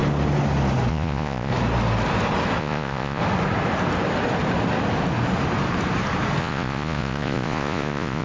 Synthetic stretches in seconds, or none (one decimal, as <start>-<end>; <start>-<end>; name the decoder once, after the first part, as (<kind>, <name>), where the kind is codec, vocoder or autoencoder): 0.9-1.5 (vocoder, Vocos); 2.6-3.2; 6.4-8.2